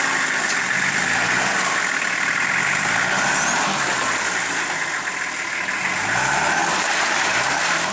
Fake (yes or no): no